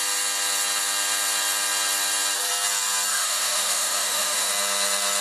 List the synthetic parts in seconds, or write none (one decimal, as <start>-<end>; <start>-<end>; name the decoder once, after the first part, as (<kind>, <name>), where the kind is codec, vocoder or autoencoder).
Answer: 3.1-4.5 (autoencoder, DAC-VAE)